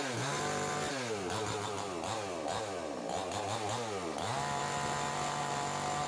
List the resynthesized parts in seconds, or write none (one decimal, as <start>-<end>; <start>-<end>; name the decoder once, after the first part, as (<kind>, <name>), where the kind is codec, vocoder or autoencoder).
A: none